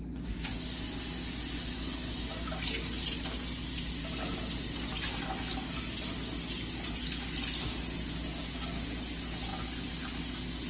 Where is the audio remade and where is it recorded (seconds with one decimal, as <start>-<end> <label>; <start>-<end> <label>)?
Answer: 0.0-10.7 recorded